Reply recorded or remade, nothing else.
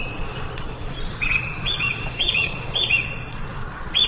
remade